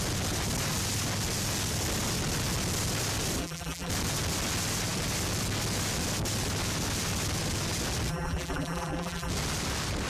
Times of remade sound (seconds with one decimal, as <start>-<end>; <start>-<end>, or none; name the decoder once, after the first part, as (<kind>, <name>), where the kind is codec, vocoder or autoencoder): 3.4-3.9 (vocoder, BigVGAN v2); 8.1-9.3